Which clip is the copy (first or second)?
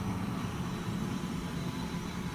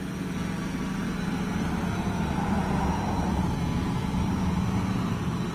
first